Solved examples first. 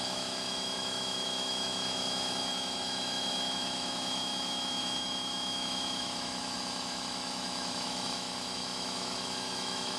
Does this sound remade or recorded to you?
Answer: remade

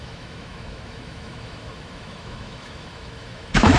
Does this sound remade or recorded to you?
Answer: remade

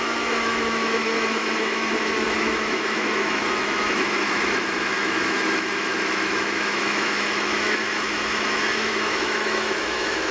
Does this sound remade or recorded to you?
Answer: remade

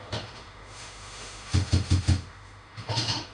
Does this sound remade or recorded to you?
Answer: remade